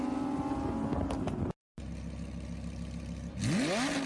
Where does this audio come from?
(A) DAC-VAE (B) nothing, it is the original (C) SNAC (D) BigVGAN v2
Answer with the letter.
B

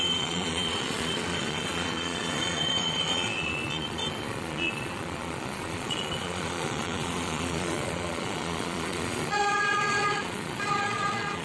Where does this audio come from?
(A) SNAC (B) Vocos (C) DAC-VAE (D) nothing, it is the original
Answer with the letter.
B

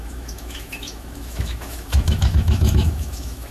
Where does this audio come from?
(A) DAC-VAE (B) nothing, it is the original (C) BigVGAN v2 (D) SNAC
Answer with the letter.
A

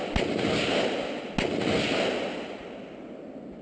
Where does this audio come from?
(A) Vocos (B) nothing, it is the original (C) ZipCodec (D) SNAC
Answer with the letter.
B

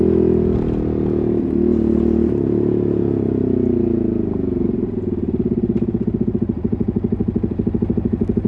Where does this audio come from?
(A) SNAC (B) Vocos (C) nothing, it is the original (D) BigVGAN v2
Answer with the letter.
C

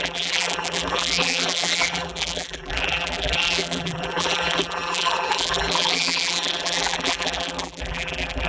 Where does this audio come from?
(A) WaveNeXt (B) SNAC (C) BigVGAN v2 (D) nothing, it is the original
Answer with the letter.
C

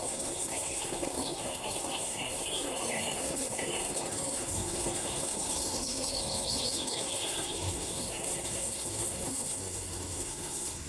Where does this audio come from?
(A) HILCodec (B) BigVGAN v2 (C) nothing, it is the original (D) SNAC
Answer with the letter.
D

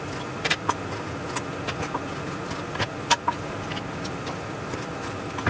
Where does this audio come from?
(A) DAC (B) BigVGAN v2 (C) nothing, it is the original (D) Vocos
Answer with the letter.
B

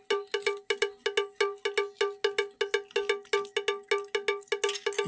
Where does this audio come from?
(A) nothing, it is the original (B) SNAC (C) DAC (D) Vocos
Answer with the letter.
A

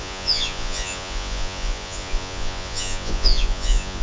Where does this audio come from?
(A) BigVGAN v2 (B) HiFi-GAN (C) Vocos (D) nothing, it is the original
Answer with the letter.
C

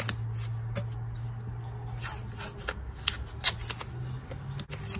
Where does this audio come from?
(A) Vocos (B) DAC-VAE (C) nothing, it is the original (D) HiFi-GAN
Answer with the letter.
C